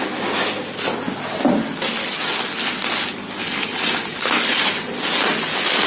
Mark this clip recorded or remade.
recorded